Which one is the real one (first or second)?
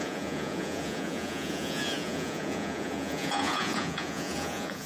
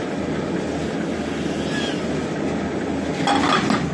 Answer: second